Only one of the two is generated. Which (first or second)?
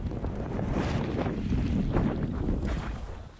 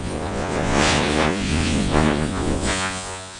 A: second